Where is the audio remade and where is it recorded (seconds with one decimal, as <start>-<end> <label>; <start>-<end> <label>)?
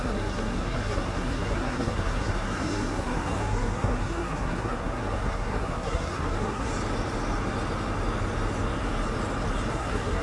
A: 0.0-6.7 remade; 6.7-9.7 recorded; 9.7-10.2 remade